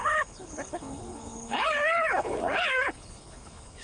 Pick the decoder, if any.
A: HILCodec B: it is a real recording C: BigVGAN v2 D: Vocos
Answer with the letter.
A